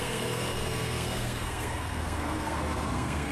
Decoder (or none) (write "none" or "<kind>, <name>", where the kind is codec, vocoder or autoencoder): codec, SNAC